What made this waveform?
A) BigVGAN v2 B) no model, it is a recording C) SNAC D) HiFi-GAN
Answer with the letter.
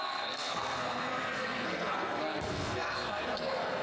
C